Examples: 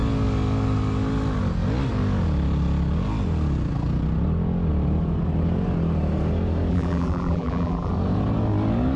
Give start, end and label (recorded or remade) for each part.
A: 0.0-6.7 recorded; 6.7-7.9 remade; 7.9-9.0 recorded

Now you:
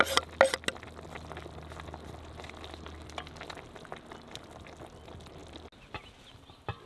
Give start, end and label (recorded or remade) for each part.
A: 0.0-6.9 recorded